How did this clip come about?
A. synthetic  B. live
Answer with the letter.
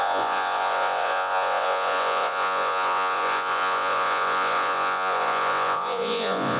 A